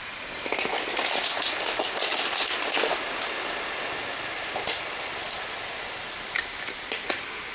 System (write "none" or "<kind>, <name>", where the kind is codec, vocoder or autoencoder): none